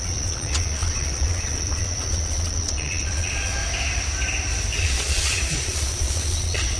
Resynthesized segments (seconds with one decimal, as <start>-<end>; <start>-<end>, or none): 0.0-3.6; 4.8-6.8